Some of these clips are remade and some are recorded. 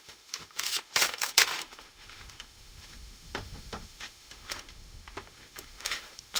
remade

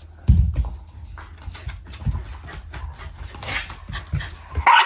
recorded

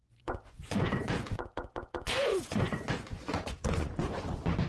remade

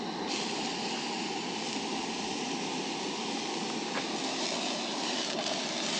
recorded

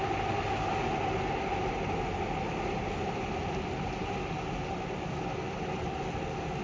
recorded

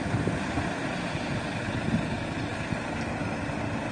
recorded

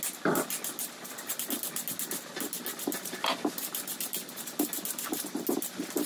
recorded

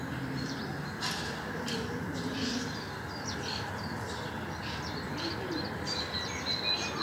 remade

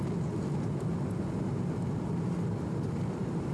recorded